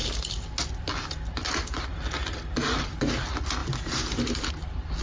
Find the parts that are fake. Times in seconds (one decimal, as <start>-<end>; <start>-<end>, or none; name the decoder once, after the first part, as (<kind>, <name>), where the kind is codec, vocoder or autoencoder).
none

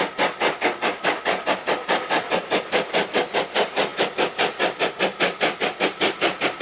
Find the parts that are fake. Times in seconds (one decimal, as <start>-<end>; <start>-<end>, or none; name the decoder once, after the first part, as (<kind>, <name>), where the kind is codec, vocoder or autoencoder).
none

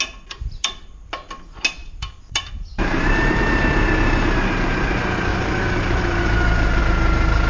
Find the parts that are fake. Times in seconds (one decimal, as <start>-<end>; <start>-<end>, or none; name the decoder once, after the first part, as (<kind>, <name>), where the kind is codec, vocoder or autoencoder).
1.8-3.4 (vocoder, BigVGAN v2); 5.3-6.8

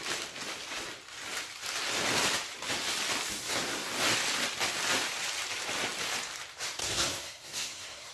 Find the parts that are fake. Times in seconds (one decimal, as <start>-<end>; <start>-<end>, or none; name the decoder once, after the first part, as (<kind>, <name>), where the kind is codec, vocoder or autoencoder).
3.4-3.9 (codec, SNAC); 6.8-8.1

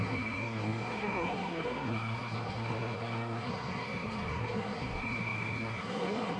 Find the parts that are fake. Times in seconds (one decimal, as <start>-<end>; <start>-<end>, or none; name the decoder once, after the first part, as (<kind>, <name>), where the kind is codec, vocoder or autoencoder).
0.0-6.4 (codec, SNAC)

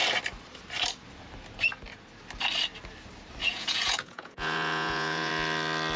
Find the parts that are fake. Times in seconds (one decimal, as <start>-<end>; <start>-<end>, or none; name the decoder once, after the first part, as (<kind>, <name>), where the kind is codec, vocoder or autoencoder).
3.4-5.3 (vocoder, Vocos)